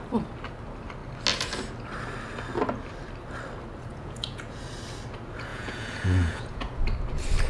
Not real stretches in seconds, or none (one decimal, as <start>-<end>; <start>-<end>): 3.9-4.6; 5.5-6.8